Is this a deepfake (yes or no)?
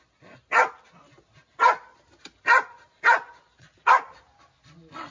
no